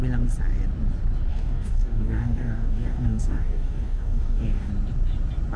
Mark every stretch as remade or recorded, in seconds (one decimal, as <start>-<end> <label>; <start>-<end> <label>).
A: 0.0-1.3 recorded; 1.3-4.7 remade; 4.7-5.6 recorded